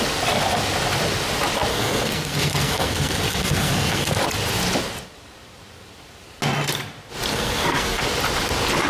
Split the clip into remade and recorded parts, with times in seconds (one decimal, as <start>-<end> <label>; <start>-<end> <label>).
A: 0.0-1.7 recorded; 1.7-4.2 remade; 4.2-7.3 recorded; 7.3-8.0 remade; 8.0-8.9 recorded